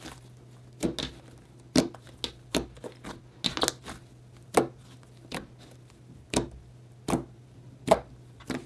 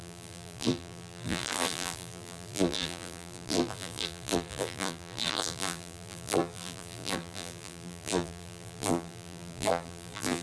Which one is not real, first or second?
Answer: second